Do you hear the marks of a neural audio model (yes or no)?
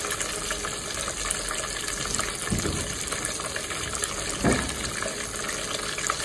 no